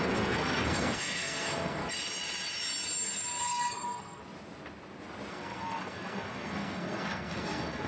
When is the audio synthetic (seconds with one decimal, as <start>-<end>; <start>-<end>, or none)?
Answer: 0.0-1.8; 3.4-4.2; 5.3-7.9